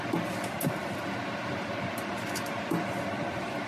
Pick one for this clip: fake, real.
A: real